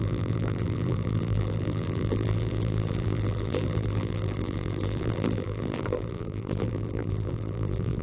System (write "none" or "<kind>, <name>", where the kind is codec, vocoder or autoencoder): vocoder, BigVGAN v2